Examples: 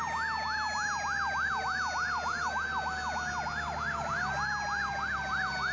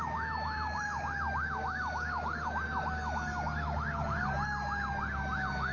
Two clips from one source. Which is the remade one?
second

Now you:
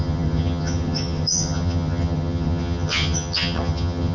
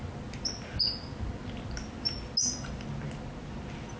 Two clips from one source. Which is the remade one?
first